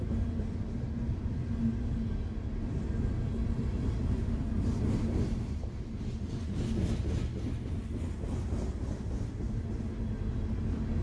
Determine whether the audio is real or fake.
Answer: real